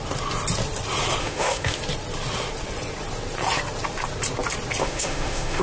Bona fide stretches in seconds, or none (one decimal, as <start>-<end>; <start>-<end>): 0.0-1.2; 1.8-4.8